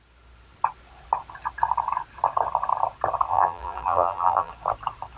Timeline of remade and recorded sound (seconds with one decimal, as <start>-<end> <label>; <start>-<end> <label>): 0.0-3.3 recorded; 3.3-4.5 remade; 4.5-5.2 recorded